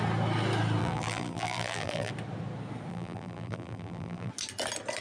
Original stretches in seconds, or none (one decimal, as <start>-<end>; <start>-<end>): 0.0-0.8; 2.1-2.9; 4.3-5.0